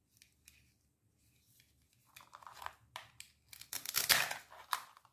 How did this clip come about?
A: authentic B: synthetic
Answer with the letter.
A